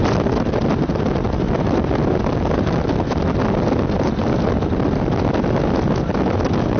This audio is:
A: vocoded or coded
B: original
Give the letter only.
B